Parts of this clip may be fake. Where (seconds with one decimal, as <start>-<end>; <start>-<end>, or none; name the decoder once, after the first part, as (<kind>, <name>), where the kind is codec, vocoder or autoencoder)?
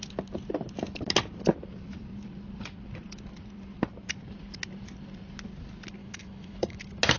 6.0-6.8 (autoencoder, DAC-VAE)